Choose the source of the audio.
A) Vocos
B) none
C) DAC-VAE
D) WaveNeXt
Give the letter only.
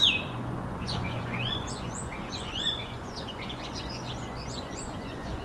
A